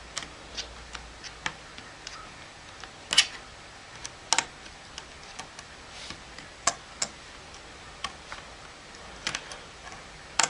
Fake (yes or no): no